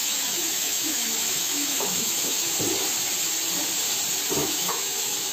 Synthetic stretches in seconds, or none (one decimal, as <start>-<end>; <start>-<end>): 0.0-2.6; 4.4-5.3